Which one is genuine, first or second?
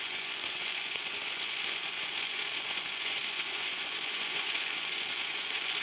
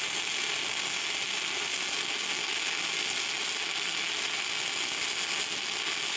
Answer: second